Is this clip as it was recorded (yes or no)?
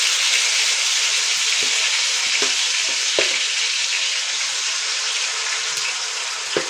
yes